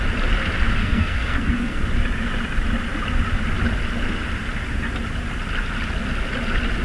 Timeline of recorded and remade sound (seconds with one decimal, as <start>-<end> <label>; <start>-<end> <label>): 0.0-0.8 recorded; 0.8-1.8 remade; 1.8-6.8 recorded